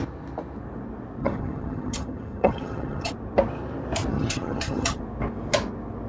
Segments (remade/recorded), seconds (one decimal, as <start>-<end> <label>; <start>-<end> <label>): 0.0-1.2 recorded; 1.2-3.1 remade; 3.1-4.1 recorded; 4.1-5.0 remade; 5.0-6.1 recorded